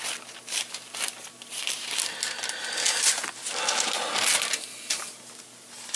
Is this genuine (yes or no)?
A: yes